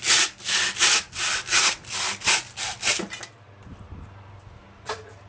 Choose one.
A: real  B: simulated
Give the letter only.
A